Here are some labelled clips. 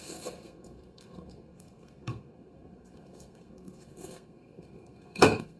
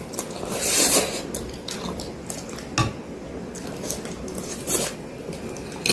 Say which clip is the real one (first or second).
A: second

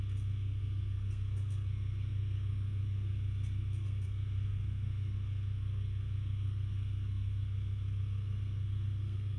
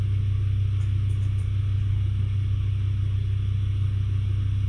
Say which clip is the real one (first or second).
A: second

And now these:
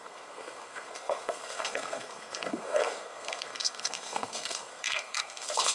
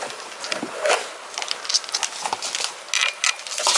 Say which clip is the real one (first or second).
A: second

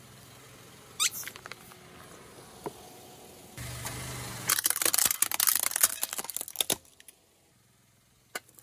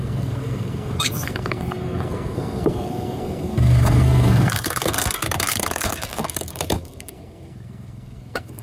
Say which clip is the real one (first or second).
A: first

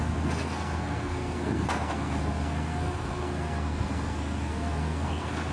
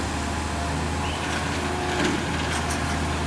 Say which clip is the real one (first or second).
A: second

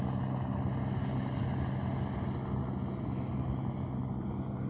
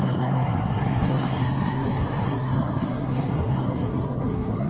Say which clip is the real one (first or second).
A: first